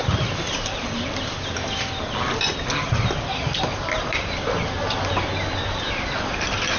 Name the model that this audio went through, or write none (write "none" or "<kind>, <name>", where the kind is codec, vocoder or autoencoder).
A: none